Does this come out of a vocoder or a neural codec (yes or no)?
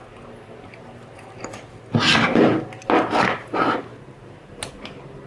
no